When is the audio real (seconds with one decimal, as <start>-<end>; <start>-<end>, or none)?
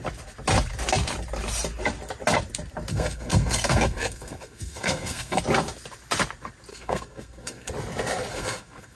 0.0-2.9; 5.4-6.7; 7.7-8.3